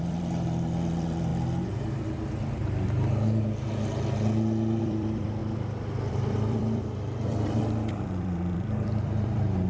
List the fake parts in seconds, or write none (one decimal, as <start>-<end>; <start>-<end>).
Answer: 0.0-1.3; 1.8-2.6; 4.8-9.7